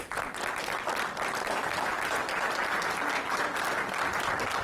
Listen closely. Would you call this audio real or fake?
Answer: real